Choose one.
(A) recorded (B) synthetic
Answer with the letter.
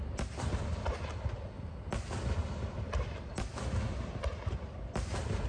A